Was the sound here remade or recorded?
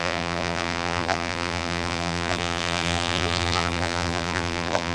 remade